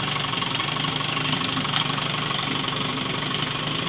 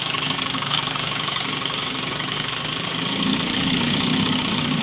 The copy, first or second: second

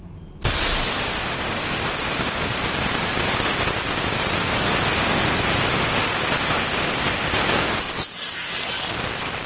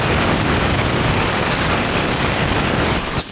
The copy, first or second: second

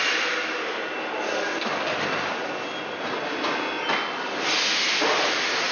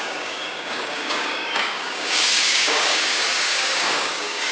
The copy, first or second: second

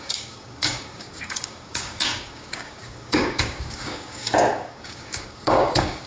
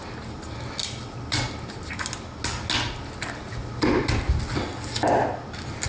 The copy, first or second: first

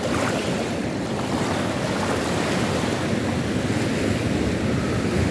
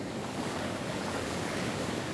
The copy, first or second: second